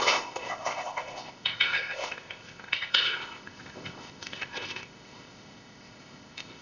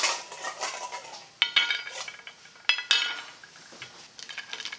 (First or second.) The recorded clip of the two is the second